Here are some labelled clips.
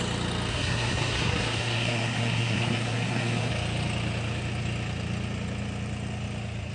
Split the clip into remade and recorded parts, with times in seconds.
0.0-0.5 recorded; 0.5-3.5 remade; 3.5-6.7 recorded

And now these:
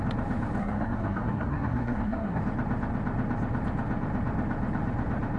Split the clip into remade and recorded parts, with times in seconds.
0.0-0.6 recorded; 0.6-2.4 remade; 2.4-5.4 recorded

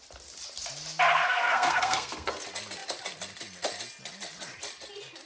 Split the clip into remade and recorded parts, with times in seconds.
0.0-1.1 recorded; 1.1-2.3 remade; 2.3-5.3 recorded

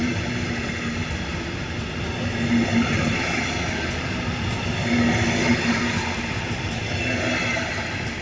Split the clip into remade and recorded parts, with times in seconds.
0.0-8.2 recorded

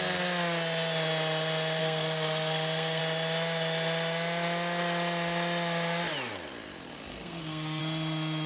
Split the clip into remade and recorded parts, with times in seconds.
0.0-1.8 recorded; 1.8-3.0 remade; 3.0-7.1 recorded; 7.1-7.8 remade; 7.8-8.5 recorded